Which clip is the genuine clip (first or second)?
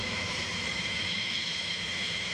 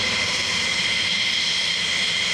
second